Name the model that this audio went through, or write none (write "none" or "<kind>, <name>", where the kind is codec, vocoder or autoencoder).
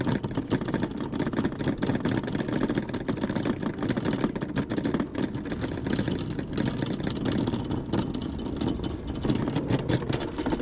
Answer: none